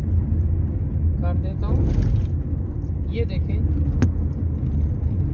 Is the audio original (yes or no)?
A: yes